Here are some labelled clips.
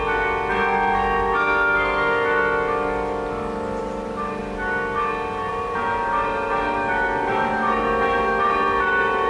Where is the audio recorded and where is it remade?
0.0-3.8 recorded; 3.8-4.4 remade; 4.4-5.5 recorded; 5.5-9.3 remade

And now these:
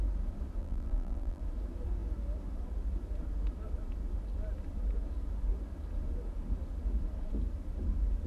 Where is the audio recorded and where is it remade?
0.0-0.6 recorded; 0.6-1.4 remade; 1.4-8.3 recorded